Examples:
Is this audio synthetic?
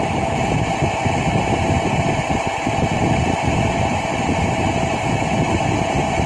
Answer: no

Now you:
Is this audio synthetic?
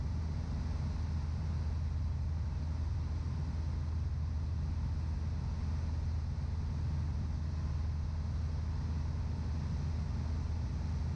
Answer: no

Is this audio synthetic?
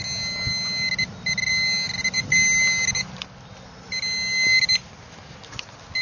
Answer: no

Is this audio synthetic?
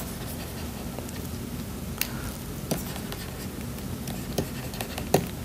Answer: no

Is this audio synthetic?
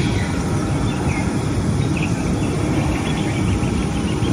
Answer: no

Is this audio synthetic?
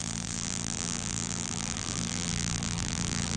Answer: yes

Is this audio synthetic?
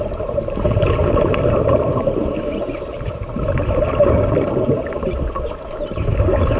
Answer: yes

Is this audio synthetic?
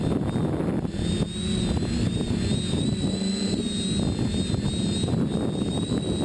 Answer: no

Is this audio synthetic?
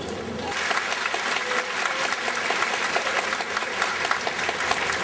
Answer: yes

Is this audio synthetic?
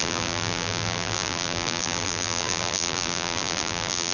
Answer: yes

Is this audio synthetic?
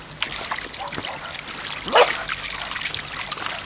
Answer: no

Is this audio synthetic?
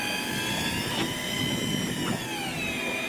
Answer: no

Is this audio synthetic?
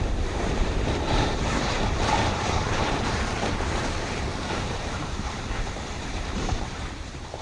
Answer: yes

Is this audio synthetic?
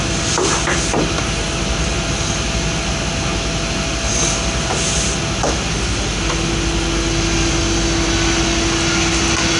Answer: no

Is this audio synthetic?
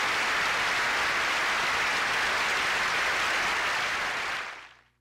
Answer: no